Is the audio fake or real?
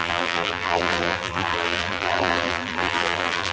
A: fake